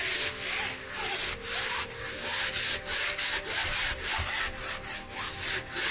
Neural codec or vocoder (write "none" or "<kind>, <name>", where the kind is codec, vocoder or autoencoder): none